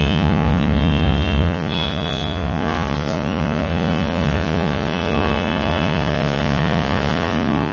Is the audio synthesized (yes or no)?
yes